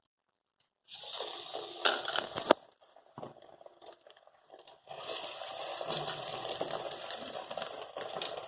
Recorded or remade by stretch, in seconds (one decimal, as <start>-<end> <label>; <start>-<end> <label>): 0.0-5.7 recorded; 5.7-8.1 remade; 8.1-8.5 recorded